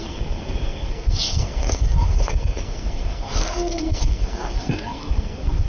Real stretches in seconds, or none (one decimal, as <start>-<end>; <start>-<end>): none